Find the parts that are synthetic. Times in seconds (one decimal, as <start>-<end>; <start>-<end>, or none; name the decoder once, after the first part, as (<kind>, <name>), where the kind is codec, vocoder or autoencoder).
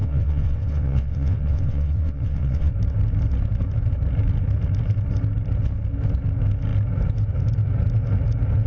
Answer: 0.0-2.7 (vocoder, WaveNeXt)